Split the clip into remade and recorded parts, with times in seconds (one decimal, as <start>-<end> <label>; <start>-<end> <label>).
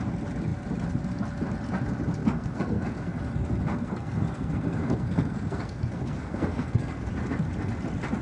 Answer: 0.0-2.2 recorded; 2.2-3.2 remade; 3.2-3.7 recorded; 3.7-7.1 remade; 7.1-8.2 recorded